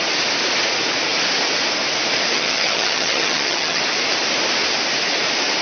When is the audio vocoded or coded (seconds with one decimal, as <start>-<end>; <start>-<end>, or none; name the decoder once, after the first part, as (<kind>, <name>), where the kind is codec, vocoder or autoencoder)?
2.3-3.8 (vocoder, HiFi-GAN)